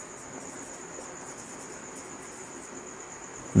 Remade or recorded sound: recorded